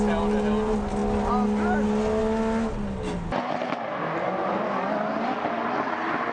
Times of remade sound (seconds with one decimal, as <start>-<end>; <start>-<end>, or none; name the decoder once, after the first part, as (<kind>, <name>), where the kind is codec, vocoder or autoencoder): none